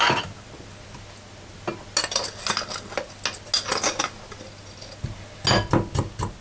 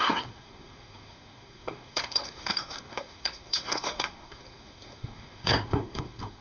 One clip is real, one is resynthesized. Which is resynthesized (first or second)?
second